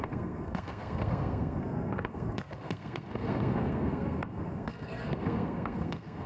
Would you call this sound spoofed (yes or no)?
yes